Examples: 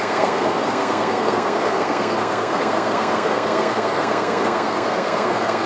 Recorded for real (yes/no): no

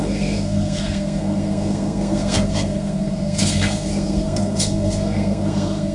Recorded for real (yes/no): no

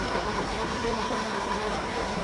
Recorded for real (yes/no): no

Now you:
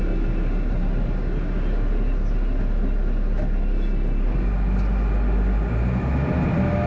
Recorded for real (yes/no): yes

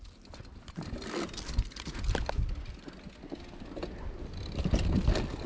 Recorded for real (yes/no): yes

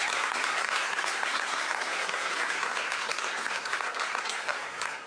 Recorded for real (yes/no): no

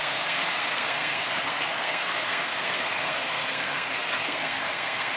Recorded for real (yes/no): no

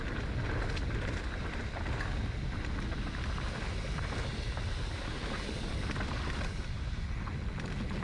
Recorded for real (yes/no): yes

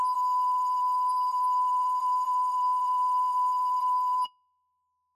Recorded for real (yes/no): no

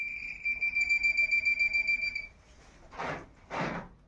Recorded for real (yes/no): yes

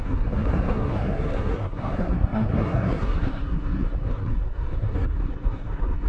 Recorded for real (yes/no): no